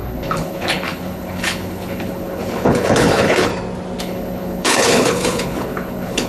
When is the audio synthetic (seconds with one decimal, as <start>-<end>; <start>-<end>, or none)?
0.0-3.5; 4.0-6.3